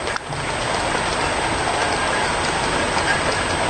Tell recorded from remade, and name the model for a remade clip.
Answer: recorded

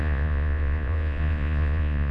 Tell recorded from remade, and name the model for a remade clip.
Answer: remade, vocoder, Vocos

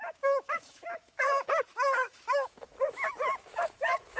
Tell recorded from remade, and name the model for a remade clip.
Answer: remade, autoencoder, DAC-VAE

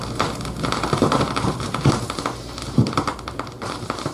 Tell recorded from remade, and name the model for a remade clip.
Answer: remade, vocoder, BigVGAN v2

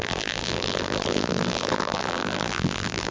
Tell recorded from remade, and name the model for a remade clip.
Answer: remade, vocoder, BigVGAN v2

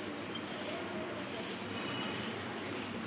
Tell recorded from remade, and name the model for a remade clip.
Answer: recorded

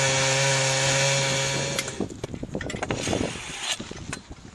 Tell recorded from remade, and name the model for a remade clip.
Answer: recorded